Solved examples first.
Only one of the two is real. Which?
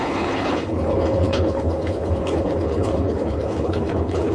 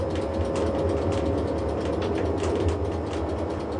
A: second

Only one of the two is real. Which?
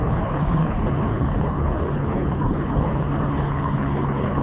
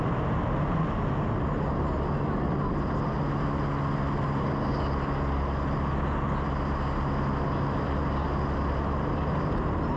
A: second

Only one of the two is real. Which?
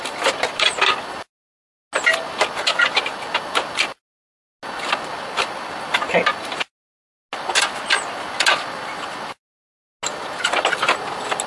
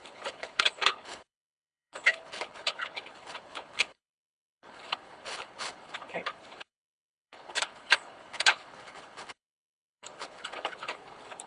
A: first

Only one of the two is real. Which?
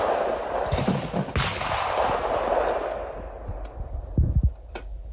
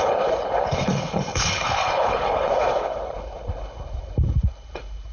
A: first